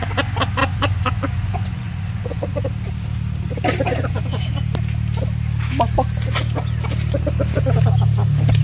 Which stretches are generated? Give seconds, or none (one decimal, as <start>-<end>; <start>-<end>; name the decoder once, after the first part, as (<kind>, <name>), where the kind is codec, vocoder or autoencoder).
0.6-2.6 (vocoder, Vocos); 4.0-4.5